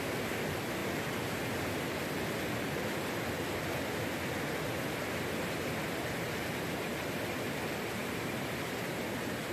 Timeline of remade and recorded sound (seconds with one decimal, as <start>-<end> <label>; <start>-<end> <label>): 0.0-9.5 recorded